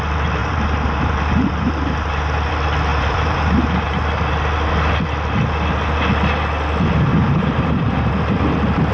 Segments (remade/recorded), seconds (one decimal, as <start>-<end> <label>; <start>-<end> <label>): 0.0-0.4 recorded; 0.4-2.5 remade; 2.5-2.9 recorded; 2.9-4.0 remade; 4.0-7.1 recorded; 7.1-8.1 remade; 8.1-8.9 recorded